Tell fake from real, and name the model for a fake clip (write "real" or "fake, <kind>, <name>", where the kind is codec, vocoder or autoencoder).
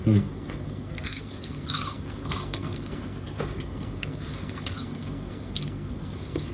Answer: fake, codec, SNAC